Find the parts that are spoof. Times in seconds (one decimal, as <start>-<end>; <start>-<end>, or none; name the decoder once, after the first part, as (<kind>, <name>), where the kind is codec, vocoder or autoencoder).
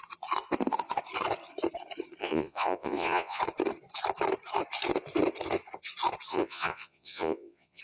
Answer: 2.2-3.4 (vocoder, Vocos); 6.3-7.8